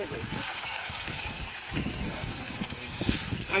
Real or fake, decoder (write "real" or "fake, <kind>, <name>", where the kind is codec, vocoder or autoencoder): fake, codec, SNAC